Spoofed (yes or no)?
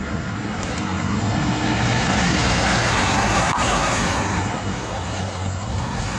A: yes